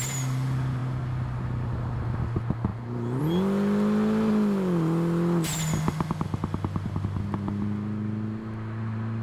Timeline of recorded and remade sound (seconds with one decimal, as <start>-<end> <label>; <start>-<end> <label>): 0.0-9.2 recorded

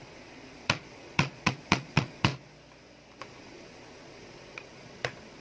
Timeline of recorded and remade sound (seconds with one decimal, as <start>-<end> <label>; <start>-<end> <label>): 0.0-2.3 remade; 2.3-3.2 recorded; 3.2-5.4 remade

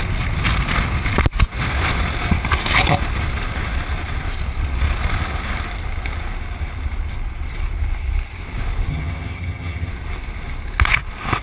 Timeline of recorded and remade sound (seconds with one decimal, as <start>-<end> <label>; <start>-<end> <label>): 0.0-8.9 recorded; 8.9-9.9 remade; 9.9-11.4 recorded

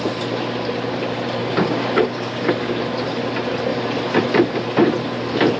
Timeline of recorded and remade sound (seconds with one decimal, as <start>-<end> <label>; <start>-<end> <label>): 0.0-1.4 recorded; 1.4-2.5 remade; 2.5-5.6 recorded